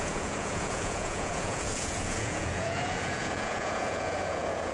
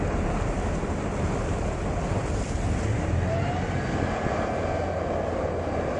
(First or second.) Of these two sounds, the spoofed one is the first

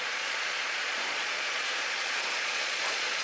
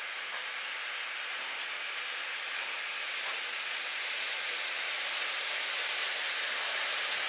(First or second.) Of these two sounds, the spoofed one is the first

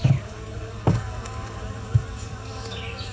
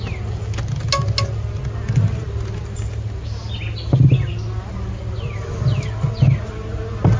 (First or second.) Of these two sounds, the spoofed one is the first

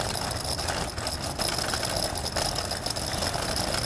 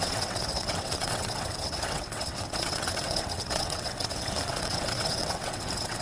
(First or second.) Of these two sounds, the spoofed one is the second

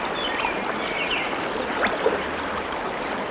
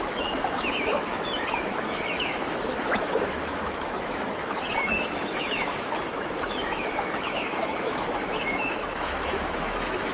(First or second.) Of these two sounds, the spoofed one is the second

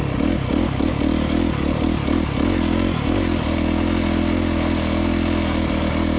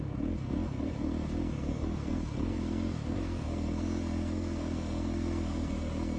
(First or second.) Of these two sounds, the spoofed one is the second